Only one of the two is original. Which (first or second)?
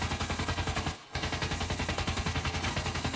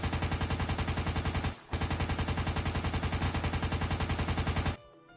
second